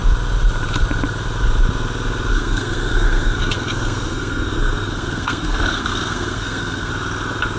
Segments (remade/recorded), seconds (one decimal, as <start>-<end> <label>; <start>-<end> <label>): 0.0-2.3 recorded; 2.3-6.9 remade; 6.9-7.6 recorded